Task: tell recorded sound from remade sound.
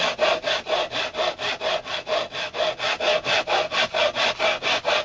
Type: recorded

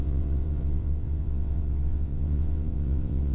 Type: remade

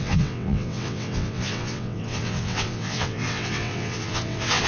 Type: remade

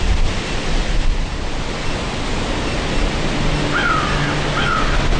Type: recorded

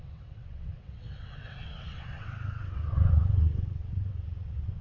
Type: remade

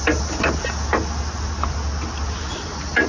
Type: recorded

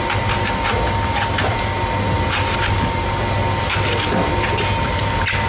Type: recorded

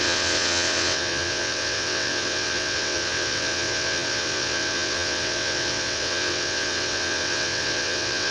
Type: remade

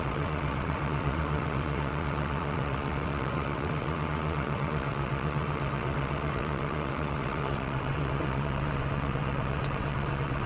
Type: remade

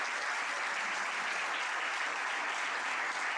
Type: recorded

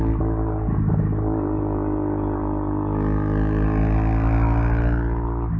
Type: recorded